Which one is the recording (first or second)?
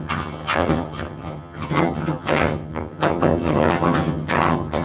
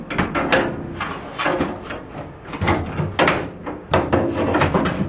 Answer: second